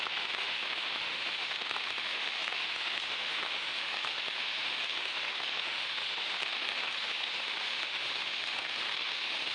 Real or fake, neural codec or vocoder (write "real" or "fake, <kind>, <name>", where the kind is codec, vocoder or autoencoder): fake, autoencoder, DAC-VAE